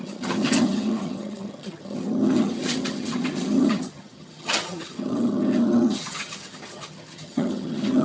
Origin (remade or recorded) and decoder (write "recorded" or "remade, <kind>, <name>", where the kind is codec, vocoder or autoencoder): remade, vocoder, HiFi-GAN